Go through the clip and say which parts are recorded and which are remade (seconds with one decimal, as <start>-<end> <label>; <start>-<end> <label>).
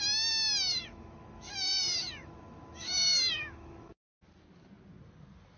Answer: 0.0-0.7 recorded; 0.7-3.9 remade; 3.9-5.6 recorded